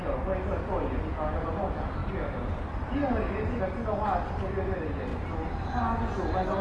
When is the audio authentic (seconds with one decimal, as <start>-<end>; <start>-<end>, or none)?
0.0-5.1; 5.7-6.6

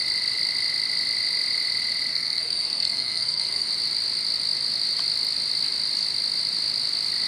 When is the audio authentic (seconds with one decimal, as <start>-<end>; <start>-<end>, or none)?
0.0-2.1; 3.7-7.3